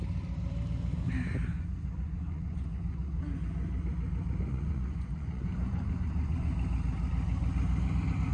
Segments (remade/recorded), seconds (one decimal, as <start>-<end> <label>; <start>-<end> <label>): 0.0-1.5 recorded; 1.5-3.2 remade; 3.2-4.5 recorded; 4.5-6.5 remade; 6.5-8.3 recorded